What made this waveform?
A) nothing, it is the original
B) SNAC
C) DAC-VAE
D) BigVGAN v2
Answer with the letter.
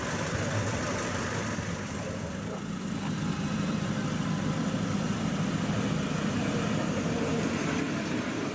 A